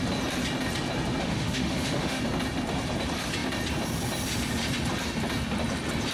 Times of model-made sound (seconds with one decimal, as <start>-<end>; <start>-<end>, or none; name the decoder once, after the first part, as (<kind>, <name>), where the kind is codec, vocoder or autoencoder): 1.2-2.2 (autoencoder, DAC-VAE)